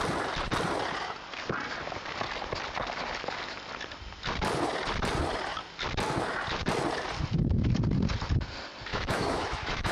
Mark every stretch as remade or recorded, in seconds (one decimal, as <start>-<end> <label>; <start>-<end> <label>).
0.0-8.9 recorded; 8.9-9.9 remade